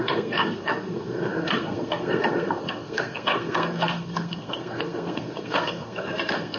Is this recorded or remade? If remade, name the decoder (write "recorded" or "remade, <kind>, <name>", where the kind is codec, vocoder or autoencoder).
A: remade, codec, SNAC